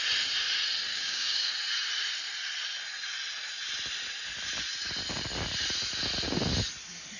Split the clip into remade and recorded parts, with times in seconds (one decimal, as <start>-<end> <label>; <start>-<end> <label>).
0.0-0.9 recorded; 0.9-1.5 remade; 1.5-7.2 recorded